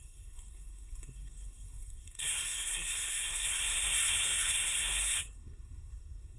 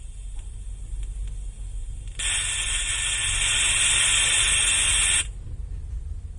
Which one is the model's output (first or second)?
first